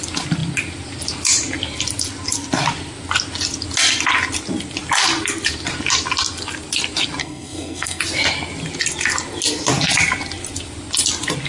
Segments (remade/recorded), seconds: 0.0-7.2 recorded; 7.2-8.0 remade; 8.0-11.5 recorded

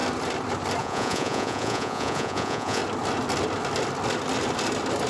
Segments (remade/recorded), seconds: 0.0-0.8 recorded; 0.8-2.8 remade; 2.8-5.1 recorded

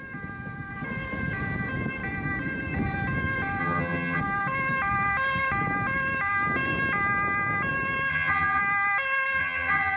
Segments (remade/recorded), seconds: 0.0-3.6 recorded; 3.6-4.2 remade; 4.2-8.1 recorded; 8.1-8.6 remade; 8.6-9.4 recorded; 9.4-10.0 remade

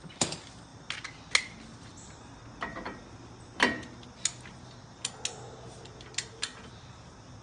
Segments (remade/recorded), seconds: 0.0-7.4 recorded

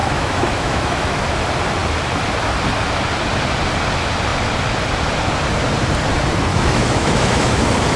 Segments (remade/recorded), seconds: 0.0-1.2 remade; 1.2-6.5 recorded; 6.5-7.6 remade; 7.6-8.0 recorded